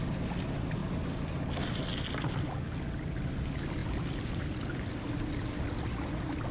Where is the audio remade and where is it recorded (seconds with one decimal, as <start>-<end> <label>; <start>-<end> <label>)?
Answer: 0.0-3.8 recorded; 3.8-5.3 remade; 5.3-6.5 recorded